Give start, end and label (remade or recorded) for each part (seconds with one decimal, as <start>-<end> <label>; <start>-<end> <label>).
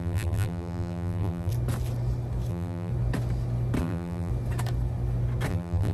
0.0-1.5 remade; 1.5-2.5 recorded; 2.5-2.9 remade; 2.9-3.8 recorded; 3.8-4.3 remade; 4.3-5.5 recorded; 5.5-5.9 remade